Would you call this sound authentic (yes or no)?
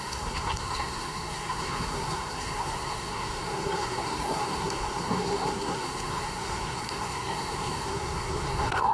no